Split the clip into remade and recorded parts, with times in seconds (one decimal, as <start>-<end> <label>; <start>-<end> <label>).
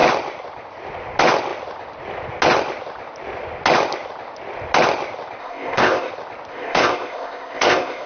0.0-5.4 recorded; 5.4-6.1 remade; 6.1-6.5 recorded; 6.5-8.1 remade